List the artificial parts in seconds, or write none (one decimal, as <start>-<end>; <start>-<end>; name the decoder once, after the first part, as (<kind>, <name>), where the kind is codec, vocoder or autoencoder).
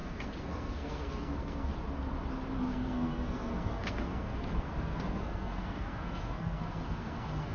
0.0-1.7 (codec, SNAC); 2.6-7.5